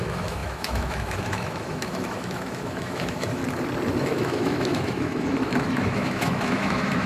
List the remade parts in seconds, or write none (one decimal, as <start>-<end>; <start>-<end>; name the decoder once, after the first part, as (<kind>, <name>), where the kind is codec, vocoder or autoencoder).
0.0-3.4 (autoencoder, DAC-VAE); 4.0-7.1